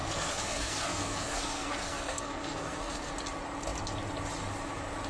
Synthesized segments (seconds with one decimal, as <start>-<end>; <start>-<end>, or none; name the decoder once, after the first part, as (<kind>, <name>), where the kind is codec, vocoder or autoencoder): 0.0-3.1 (codec, SNAC)